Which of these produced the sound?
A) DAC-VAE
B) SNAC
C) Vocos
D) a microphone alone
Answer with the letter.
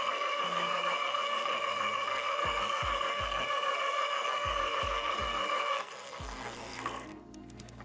B